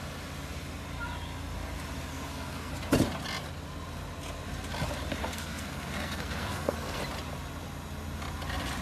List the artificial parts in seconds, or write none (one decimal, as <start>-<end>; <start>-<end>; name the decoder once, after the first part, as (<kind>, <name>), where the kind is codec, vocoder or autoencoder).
2.1-2.7 (codec, SNAC); 5.2-7.0

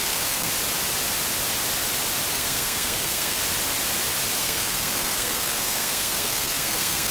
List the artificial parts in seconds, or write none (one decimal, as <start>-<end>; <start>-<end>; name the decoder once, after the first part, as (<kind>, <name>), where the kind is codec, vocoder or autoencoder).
0.0-0.5 (codec, SNAC); 2.3-3.4; 4.4-7.1

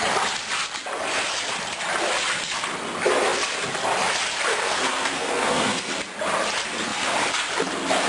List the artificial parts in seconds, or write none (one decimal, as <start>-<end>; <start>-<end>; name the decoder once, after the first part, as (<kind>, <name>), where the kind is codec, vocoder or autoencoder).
4.5-5.9 (codec, SNAC)

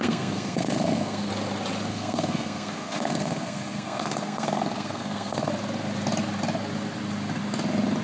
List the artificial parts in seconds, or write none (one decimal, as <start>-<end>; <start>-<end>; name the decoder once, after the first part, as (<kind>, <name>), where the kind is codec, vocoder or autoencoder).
0.0-1.3 (codec, SNAC); 1.9-5.5

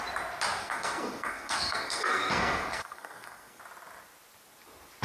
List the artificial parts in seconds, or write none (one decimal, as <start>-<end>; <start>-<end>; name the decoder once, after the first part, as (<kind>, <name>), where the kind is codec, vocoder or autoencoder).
0.6-3.6 (codec, SNAC)

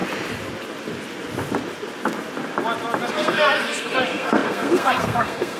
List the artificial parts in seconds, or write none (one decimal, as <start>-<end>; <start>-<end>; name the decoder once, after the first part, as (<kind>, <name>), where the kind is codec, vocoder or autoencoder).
3.1-5.6 (codec, SNAC)